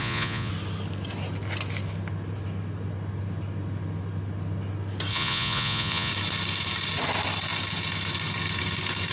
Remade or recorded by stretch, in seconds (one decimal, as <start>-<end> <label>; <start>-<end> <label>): 0.0-0.5 remade; 0.5-5.1 recorded; 5.1-6.1 remade; 6.1-9.1 recorded